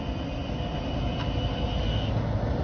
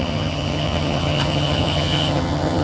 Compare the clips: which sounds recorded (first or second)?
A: first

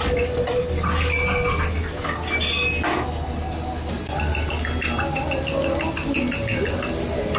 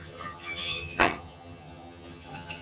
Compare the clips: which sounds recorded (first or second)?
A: first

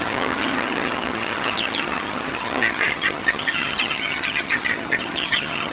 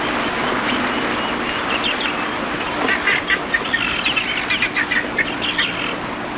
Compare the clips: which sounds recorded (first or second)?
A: second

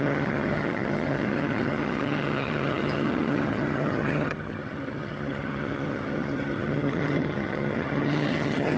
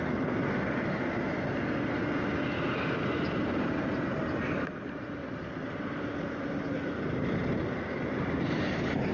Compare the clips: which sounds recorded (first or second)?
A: second